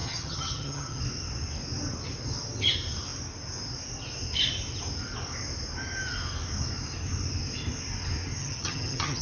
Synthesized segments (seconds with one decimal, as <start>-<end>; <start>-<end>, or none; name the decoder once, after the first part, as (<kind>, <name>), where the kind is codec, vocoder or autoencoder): 0.0-1.0 (vocoder, HiFi-GAN); 8.4-9.2